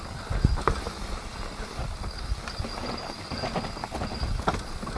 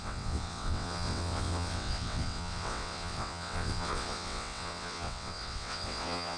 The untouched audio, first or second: first